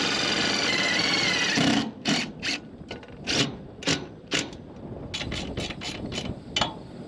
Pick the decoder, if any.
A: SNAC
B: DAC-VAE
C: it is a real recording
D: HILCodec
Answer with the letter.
C